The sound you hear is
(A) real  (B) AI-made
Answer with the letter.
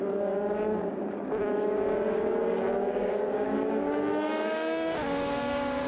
B